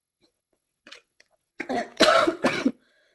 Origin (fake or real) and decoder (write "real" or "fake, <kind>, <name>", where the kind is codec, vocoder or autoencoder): fake, vocoder, WaveNeXt